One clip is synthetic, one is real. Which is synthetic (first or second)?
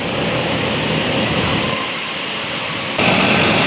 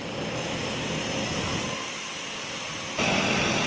first